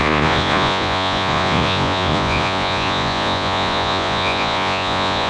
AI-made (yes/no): yes